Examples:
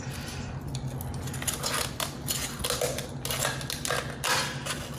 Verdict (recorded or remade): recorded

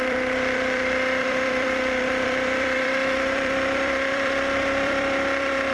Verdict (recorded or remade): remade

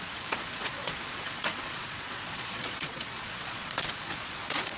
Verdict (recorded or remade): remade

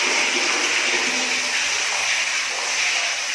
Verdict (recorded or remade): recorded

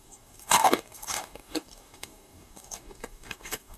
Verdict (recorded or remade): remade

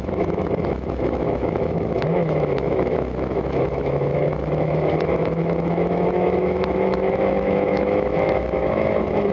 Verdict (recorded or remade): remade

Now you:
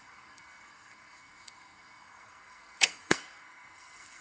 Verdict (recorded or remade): remade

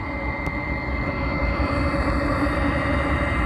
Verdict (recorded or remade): recorded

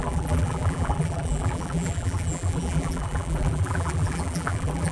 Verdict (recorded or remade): remade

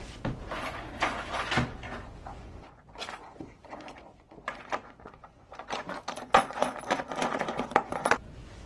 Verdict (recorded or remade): remade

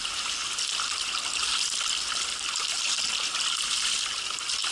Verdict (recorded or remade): recorded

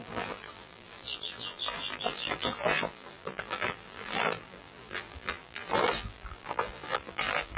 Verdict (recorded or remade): remade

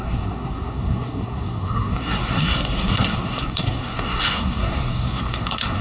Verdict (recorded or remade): remade